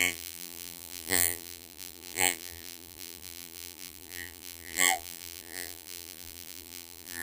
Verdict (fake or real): fake